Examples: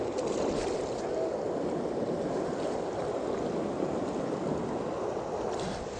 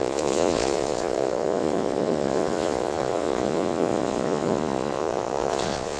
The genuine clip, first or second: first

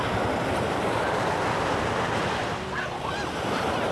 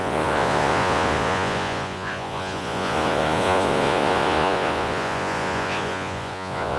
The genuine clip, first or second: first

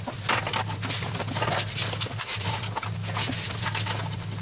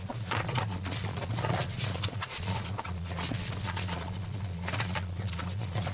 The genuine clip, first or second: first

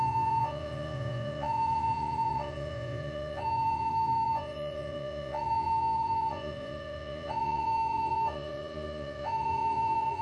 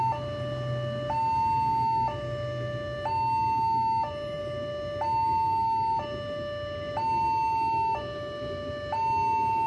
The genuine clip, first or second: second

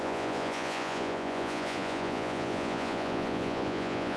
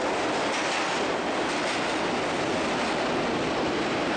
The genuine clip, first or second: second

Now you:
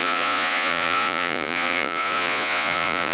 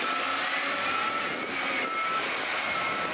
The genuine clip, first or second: second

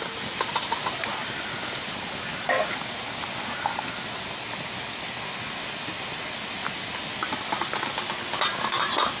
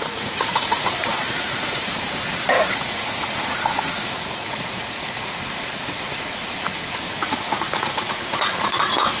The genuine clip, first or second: first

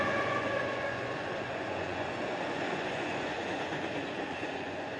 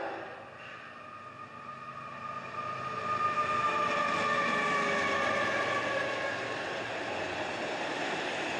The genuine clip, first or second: second